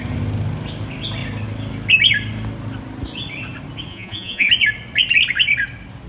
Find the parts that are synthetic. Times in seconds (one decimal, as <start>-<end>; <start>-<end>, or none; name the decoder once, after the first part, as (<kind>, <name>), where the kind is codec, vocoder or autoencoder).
3.9-4.5 (vocoder, Vocos)